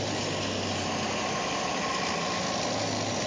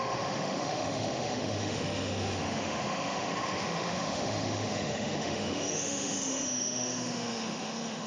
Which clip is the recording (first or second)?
first